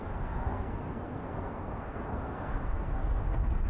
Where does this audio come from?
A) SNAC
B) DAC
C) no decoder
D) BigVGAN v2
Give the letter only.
A